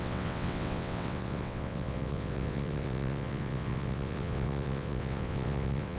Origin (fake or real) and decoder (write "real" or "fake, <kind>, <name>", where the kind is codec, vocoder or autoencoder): fake, vocoder, WaveNeXt